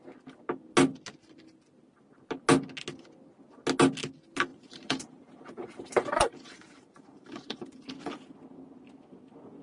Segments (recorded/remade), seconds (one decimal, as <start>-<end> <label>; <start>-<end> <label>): 0.0-4.5 recorded; 4.5-7.8 remade; 7.8-9.6 recorded